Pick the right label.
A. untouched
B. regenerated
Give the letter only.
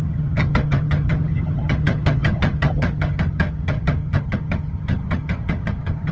B